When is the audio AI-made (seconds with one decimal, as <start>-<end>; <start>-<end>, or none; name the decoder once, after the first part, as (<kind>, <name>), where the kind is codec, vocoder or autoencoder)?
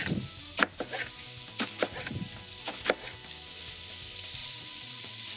4.4-5.4 (vocoder, WaveNeXt)